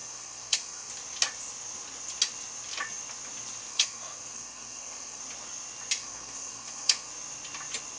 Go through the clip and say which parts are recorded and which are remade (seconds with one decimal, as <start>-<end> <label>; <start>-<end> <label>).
0.0-0.9 remade; 0.9-3.7 recorded; 3.7-5.2 remade; 5.2-6.0 recorded; 6.0-7.1 remade; 7.1-8.0 recorded